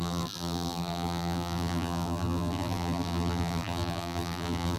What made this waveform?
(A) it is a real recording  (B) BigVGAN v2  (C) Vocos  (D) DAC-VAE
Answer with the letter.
B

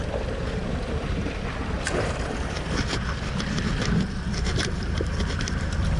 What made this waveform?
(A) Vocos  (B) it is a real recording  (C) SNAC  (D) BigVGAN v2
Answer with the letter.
D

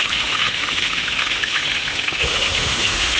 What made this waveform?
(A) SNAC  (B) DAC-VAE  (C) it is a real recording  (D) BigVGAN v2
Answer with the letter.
B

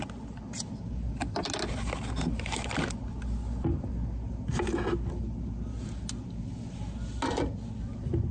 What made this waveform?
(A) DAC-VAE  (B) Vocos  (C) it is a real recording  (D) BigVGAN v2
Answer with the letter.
C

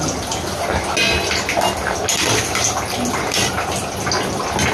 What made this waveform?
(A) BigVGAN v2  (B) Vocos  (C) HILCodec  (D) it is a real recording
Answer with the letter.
D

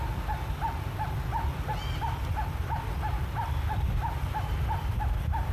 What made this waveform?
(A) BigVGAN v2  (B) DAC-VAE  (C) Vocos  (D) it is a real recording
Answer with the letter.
D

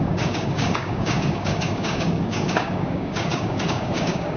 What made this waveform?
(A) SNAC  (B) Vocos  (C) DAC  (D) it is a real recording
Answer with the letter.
C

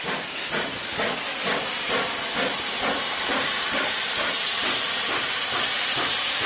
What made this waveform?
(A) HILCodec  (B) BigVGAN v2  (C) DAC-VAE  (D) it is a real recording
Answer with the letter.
D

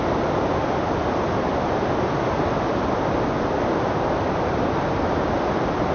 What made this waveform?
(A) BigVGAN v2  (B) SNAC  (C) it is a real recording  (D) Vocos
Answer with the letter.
C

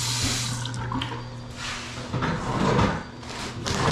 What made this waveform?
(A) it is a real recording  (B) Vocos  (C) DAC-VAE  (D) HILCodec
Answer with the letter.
A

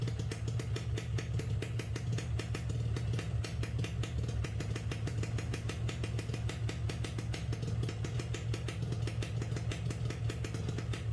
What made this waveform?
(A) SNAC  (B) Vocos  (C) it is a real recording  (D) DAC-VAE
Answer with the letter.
C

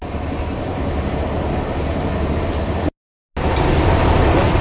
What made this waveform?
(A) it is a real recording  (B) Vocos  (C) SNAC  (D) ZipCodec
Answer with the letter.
A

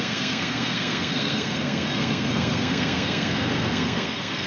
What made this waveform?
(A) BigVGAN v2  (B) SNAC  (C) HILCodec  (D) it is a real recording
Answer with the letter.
B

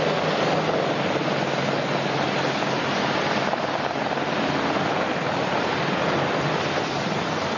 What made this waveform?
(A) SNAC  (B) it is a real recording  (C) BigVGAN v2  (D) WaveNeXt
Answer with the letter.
B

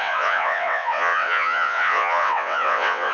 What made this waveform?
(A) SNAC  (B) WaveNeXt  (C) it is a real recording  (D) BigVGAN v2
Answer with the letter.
B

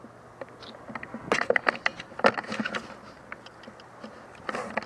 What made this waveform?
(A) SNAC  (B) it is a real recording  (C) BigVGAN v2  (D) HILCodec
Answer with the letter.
B